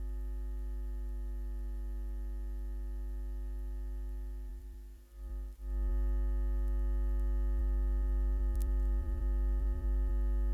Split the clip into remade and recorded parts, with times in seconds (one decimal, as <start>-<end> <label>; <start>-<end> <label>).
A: 0.0-4.5 recorded; 4.5-5.9 remade; 5.9-7.6 recorded; 7.6-10.1 remade; 10.1-10.5 recorded